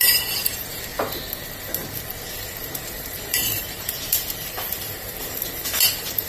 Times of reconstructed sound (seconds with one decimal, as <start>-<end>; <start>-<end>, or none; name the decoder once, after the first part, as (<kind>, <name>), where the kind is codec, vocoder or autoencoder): 0.0-0.9 (vocoder, BigVGAN v2); 2.3-6.3